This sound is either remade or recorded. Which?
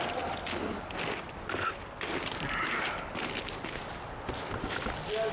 recorded